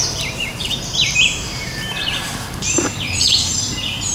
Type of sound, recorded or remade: remade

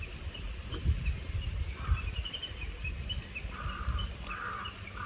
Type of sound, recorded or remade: remade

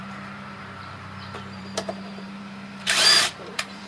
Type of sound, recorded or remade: remade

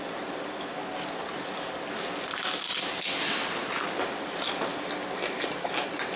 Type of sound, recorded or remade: recorded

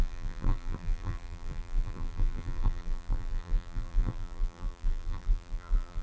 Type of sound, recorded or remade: remade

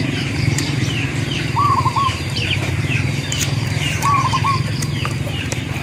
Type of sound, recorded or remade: remade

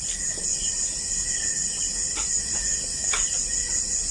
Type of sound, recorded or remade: recorded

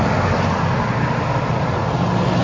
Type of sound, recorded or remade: recorded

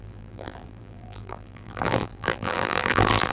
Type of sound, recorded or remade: remade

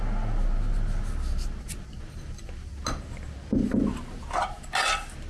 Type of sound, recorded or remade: recorded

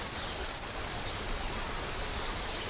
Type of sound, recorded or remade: remade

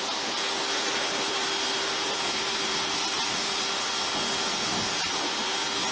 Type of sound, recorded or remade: recorded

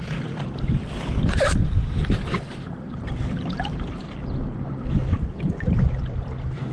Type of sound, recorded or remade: remade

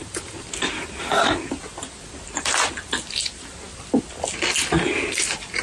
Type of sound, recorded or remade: remade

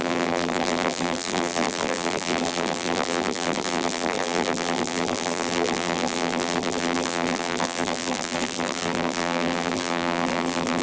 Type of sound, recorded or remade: remade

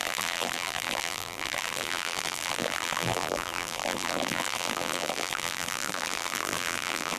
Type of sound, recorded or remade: remade